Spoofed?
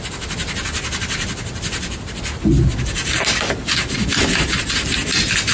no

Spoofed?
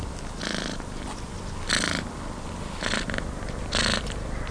no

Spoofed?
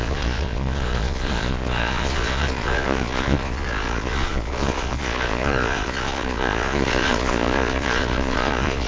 yes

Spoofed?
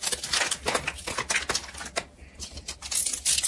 no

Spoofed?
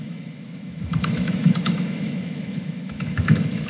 yes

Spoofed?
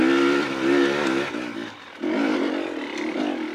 no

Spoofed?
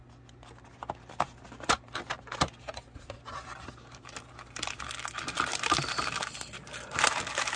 no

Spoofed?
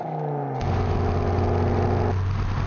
no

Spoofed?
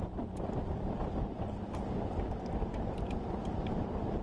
yes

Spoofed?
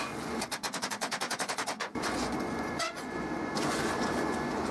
yes